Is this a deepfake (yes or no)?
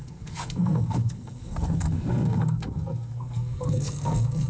yes